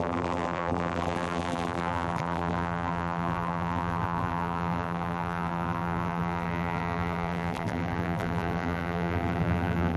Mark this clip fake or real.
fake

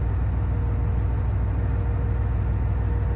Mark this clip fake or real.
real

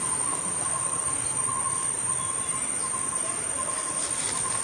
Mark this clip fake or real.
real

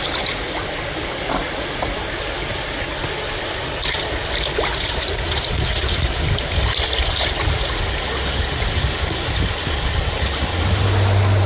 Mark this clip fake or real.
real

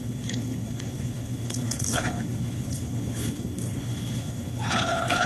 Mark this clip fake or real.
fake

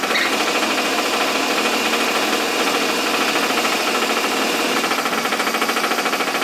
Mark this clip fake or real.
real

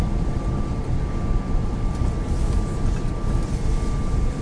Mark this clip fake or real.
real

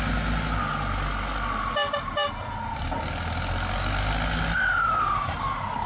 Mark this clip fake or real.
real